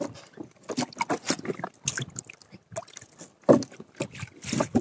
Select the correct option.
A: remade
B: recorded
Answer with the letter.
B